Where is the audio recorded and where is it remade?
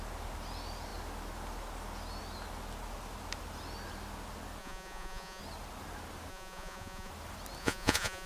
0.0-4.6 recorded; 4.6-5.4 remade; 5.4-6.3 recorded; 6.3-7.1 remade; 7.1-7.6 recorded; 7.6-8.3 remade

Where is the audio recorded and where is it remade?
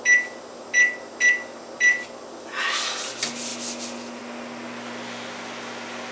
0.0-6.1 recorded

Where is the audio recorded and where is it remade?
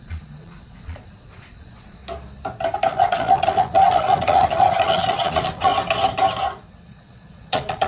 0.0-2.0 remade; 2.0-2.9 recorded; 2.9-5.7 remade; 5.7-6.9 recorded; 6.9-7.9 remade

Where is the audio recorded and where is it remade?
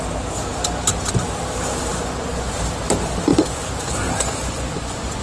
0.0-1.9 recorded; 1.9-2.5 remade; 2.5-3.3 recorded; 3.3-5.2 remade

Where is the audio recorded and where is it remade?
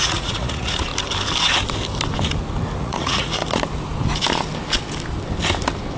0.0-0.9 remade; 0.9-2.8 recorded; 2.8-3.4 remade; 3.4-6.0 recorded